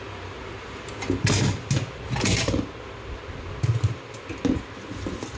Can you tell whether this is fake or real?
real